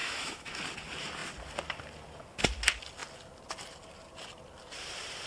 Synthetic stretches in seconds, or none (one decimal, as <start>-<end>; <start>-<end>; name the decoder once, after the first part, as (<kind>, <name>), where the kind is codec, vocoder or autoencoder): 0.0-0.6 (autoencoder, DAC-VAE)